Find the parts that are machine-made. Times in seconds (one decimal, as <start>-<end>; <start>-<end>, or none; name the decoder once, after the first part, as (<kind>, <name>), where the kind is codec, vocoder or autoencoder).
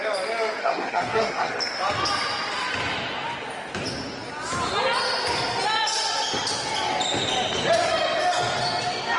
0.6-1.5 (codec, SNAC)